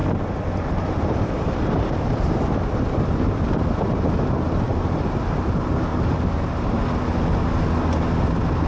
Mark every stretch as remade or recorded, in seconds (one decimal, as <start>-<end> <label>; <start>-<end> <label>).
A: 0.0-4.7 recorded; 4.7-5.5 remade; 5.5-5.9 recorded; 5.9-6.8 remade; 6.8-8.7 recorded